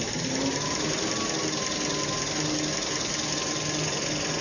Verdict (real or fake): real